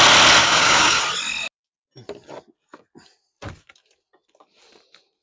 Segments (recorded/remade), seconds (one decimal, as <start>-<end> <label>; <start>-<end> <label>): 0.0-0.4 recorded; 0.4-1.0 remade; 1.0-5.2 recorded